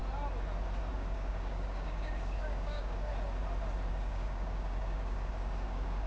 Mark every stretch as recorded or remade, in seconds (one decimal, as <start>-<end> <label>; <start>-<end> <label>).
0.0-0.9 recorded; 0.9-3.1 remade; 3.1-3.9 recorded; 3.9-6.1 remade